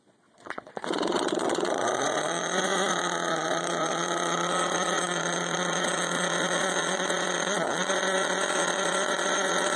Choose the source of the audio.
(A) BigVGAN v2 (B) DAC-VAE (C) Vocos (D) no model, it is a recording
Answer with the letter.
C